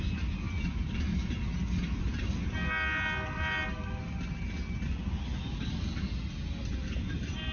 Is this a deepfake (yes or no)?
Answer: no